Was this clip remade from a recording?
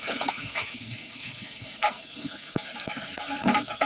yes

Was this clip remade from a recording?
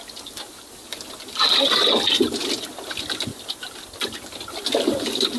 no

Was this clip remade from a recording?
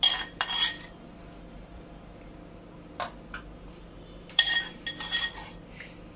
yes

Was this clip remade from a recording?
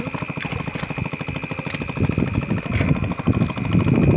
no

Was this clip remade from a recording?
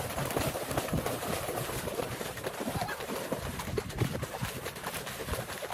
yes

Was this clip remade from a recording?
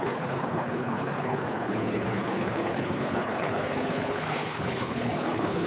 yes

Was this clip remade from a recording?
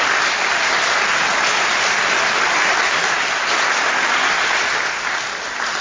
no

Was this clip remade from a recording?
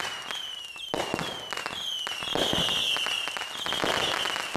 no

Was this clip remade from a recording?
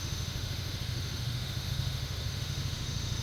yes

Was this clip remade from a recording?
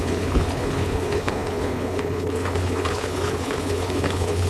yes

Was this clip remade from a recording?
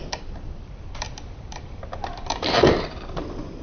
yes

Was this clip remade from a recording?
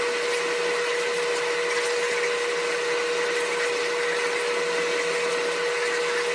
no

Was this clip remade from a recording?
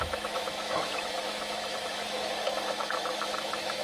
yes